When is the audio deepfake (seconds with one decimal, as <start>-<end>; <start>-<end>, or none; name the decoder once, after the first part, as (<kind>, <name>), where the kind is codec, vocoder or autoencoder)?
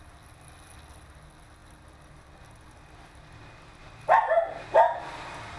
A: none